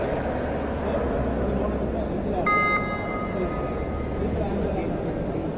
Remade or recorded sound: recorded